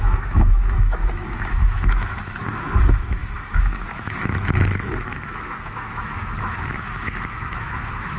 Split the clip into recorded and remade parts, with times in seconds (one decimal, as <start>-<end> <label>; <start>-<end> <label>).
0.0-8.2 remade